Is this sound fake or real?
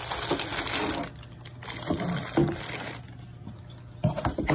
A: real